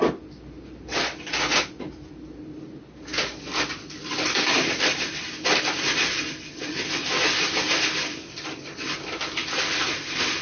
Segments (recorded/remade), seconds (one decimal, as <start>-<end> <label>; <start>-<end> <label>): 0.0-10.4 recorded